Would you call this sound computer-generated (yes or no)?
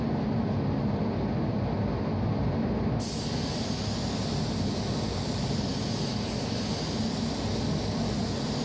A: no